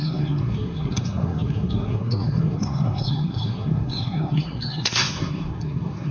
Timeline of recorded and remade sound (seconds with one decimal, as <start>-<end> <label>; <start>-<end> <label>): 0.0-6.1 remade

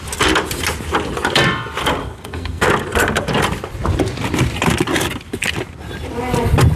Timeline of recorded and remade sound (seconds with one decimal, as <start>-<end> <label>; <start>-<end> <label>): 0.0-2.0 recorded; 2.0-2.7 remade; 2.7-6.8 recorded

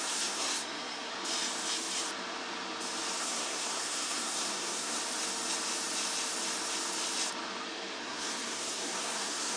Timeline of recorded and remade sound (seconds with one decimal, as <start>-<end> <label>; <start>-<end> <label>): 0.0-1.1 remade; 1.1-3.2 recorded; 3.2-5.0 remade; 5.0-8.0 recorded; 8.0-9.6 remade

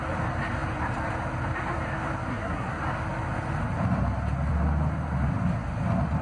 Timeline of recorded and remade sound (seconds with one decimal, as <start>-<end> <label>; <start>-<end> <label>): 0.0-2.3 recorded; 2.3-2.8 remade; 2.8-6.2 recorded